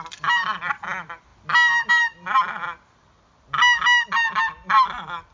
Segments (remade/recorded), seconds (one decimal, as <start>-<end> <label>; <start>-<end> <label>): 0.0-5.3 recorded

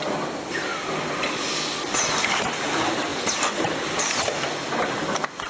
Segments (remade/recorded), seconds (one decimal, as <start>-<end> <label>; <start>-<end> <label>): 0.0-5.5 recorded

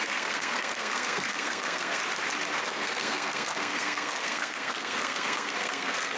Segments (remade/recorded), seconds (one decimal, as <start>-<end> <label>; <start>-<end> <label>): 0.0-2.0 remade; 2.0-2.6 recorded; 2.6-6.2 remade